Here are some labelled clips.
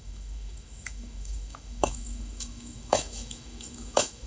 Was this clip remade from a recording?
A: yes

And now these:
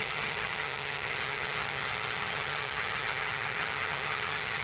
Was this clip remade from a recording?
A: yes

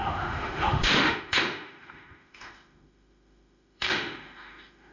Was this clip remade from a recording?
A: yes